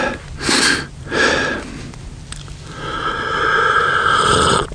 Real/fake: real